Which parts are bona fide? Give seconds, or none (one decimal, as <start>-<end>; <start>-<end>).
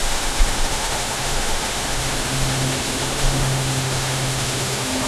none